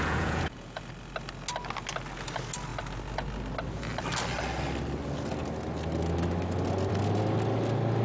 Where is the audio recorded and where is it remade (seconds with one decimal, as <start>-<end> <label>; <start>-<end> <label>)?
0.0-0.8 remade; 0.8-8.0 recorded